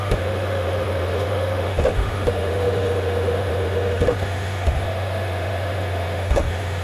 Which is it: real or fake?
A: fake